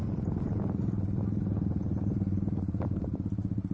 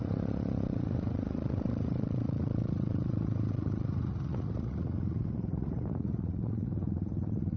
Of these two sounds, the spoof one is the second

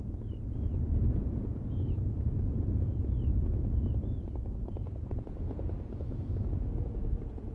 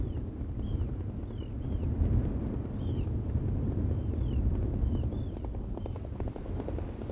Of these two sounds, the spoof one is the first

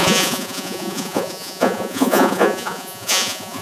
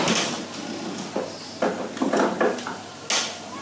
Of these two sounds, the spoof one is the first